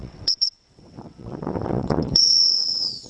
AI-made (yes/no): yes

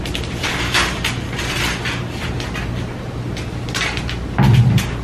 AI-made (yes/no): no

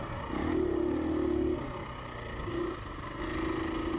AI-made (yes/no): no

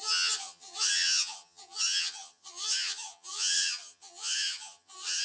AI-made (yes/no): yes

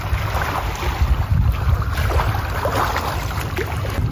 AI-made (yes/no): no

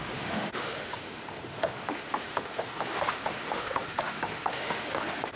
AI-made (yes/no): yes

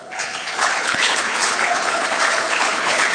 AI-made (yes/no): yes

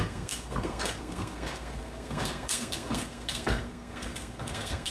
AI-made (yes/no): yes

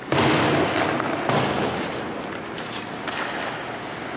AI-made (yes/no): no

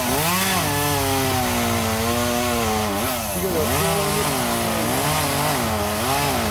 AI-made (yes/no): no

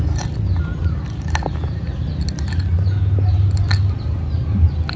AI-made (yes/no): no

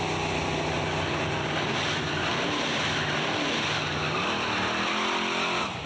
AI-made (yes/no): no